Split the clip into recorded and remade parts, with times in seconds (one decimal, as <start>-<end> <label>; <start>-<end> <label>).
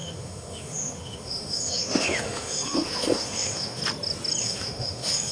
0.0-3.8 remade; 3.8-4.4 recorded; 4.4-5.3 remade